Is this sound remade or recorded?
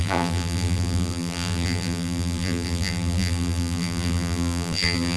remade